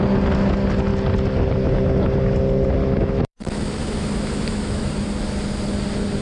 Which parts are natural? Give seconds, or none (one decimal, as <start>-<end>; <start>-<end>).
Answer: 0.0-2.8; 4.9-6.2